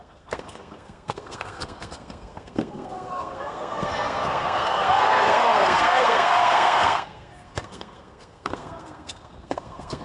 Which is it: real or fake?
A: fake